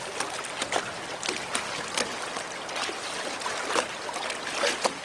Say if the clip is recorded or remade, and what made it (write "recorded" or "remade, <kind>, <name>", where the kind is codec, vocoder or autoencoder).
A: recorded